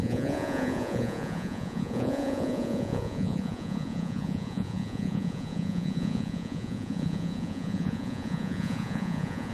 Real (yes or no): no